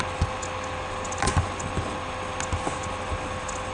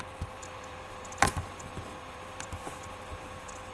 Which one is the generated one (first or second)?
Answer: second